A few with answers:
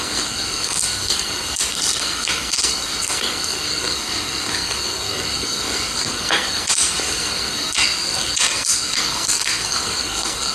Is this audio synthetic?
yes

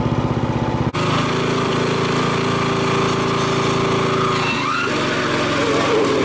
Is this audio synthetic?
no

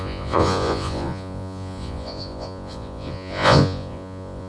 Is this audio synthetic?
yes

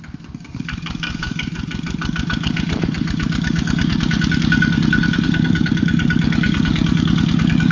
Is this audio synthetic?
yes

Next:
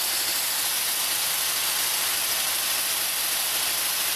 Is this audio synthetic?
no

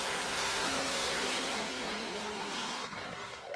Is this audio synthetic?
yes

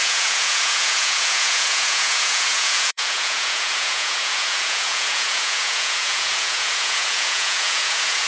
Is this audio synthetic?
yes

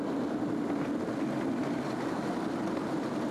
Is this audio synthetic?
no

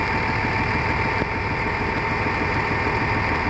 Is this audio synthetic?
no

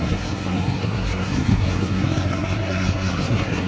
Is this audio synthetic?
yes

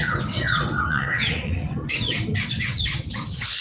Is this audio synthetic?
yes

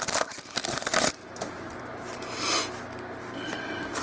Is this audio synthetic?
no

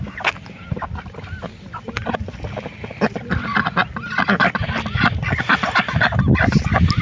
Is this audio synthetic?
no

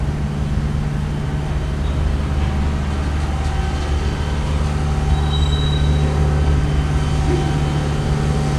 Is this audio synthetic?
no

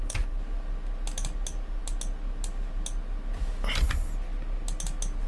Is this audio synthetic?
no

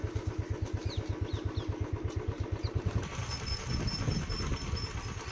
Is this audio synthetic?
no